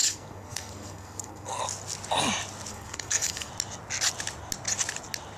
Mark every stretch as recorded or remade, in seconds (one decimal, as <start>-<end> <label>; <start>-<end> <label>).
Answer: 0.0-1.6 remade; 1.6-2.7 recorded; 2.7-3.5 remade; 3.5-5.4 recorded